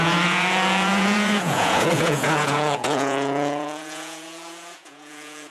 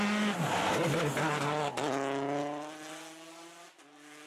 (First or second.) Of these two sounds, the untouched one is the second